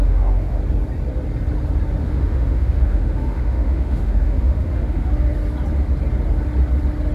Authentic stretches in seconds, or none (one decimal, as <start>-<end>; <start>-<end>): 0.6-2.0; 5.1-7.1